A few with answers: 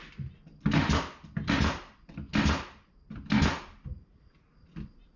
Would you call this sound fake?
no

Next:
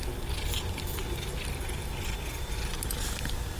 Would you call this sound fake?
no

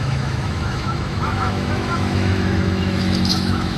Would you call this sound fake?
yes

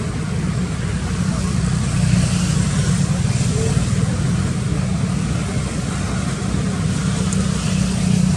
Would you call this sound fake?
no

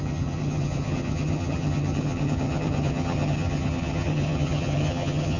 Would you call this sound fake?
yes